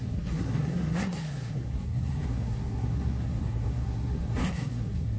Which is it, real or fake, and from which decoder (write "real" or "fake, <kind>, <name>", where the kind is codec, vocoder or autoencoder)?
fake, codec, SNAC